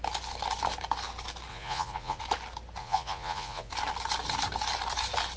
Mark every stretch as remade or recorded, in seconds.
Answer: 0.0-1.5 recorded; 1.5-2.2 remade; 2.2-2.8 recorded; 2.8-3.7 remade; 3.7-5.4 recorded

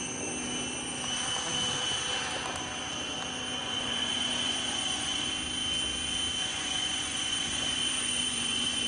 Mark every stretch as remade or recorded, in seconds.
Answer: 0.0-3.6 recorded; 3.6-5.3 remade; 5.3-6.5 recorded; 6.5-8.9 remade